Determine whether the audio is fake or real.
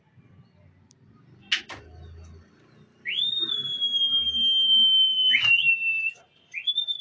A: real